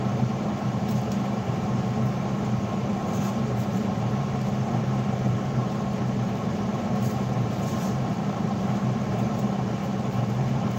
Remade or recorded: remade